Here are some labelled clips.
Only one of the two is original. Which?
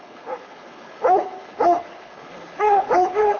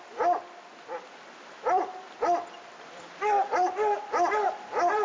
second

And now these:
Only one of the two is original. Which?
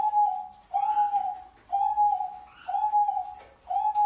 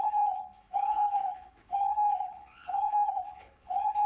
first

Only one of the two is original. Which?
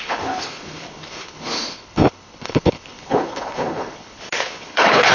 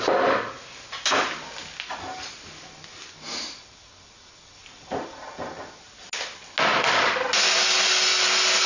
second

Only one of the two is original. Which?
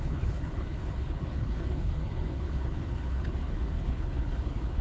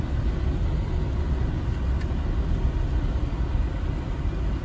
second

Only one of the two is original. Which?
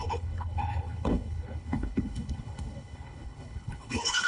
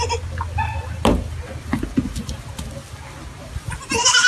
second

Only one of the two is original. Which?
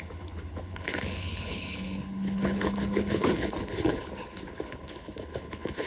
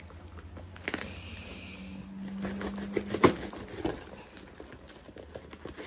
second